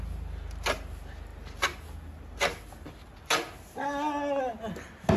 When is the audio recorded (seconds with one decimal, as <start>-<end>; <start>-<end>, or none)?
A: 0.0-5.2

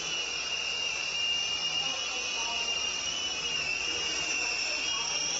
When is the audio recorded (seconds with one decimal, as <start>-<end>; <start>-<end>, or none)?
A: 0.0-5.4

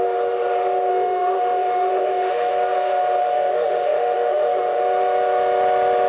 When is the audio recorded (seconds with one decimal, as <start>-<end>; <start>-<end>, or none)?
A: 0.0-0.9; 2.5-3.2; 4.8-6.1

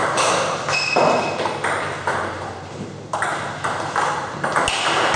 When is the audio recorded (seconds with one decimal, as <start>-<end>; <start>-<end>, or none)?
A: 0.0-5.2

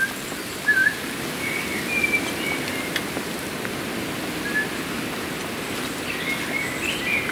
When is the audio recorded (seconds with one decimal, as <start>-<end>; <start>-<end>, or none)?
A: 0.0-7.3

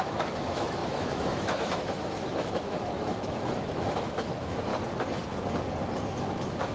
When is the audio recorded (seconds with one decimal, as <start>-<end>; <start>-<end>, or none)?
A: 4.7-5.9